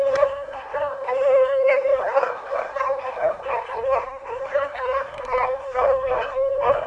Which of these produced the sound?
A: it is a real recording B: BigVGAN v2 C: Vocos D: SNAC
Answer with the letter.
D